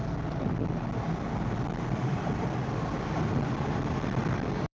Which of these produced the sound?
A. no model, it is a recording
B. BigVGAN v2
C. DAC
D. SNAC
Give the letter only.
B